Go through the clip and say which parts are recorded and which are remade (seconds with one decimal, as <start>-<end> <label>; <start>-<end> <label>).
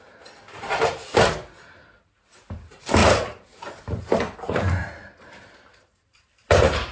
0.0-1.1 remade; 1.1-2.5 recorded; 2.5-6.9 remade